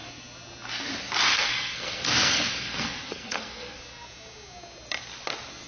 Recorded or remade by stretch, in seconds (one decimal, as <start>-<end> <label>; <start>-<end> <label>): 0.0-1.3 recorded; 1.3-3.8 remade; 3.8-5.7 recorded